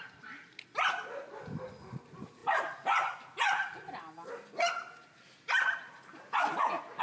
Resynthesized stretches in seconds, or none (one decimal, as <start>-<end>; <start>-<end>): none